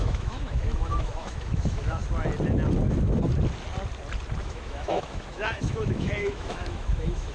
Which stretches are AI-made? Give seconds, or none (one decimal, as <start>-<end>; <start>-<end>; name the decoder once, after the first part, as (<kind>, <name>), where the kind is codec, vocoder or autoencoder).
0.0-2.0 (autoencoder, DAC-VAE); 4.4-7.3